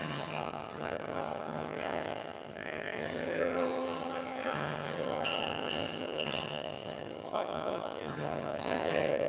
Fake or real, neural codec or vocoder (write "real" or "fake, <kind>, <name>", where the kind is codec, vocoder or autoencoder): fake, vocoder, HiFi-GAN